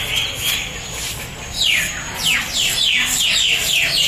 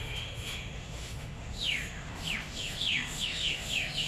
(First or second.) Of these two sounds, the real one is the first